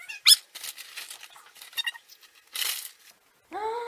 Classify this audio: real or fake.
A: real